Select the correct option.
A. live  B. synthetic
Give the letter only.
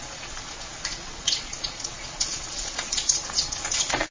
B